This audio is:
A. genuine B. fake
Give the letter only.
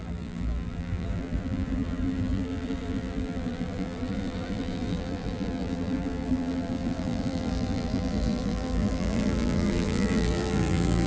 B